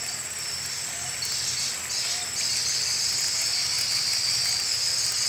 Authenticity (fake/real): real